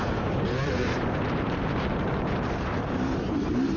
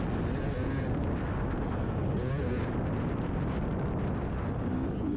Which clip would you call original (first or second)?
second